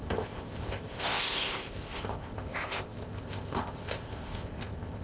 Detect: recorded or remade remade